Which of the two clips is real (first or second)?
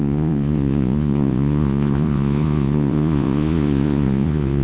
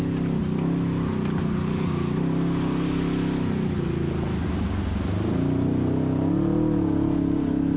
second